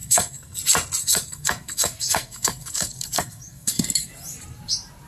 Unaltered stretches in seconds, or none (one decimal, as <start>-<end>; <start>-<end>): 0.6-1.0; 4.1-5.1

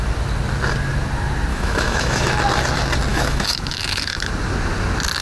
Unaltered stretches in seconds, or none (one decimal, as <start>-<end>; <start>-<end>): 0.0-1.5; 2.3-3.1; 4.3-5.2

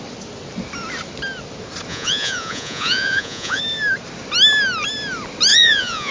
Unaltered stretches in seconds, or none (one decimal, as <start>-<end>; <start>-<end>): 0.0-1.9; 3.6-5.5

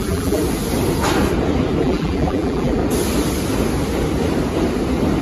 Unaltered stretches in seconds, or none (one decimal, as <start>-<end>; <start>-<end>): 0.4-1.8; 2.8-5.2